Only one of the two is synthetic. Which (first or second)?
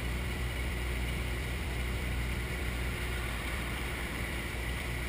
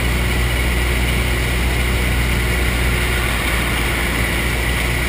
first